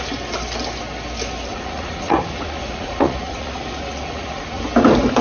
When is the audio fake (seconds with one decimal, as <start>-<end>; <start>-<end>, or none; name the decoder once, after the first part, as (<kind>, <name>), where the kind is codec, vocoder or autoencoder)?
1.5-4.6 (vocoder, Vocos)